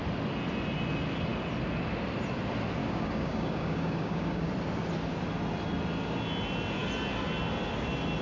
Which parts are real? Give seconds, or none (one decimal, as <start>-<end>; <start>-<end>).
0.0-2.8; 4.5-8.2